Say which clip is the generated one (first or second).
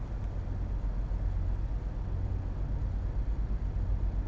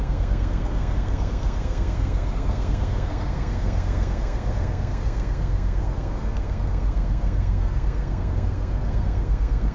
second